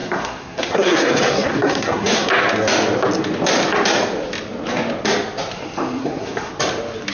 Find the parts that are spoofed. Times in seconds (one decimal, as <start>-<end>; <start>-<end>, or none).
0.0-2.3; 6.0-6.5